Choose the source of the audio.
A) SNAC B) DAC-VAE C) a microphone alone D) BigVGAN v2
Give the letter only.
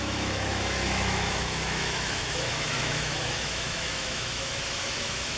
B